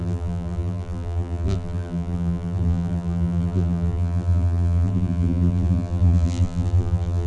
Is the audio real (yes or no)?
no